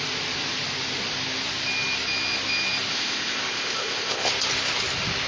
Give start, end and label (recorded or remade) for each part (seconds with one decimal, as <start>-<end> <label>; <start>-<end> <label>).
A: 0.0-2.9 recorded; 2.9-4.3 remade; 4.3-5.3 recorded